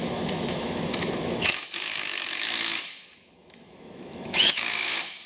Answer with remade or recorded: remade